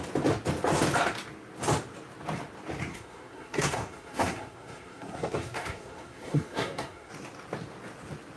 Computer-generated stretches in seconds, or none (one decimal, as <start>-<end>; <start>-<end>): 2.9-7.1